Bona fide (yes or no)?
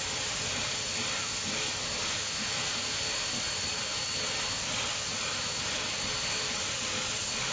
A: yes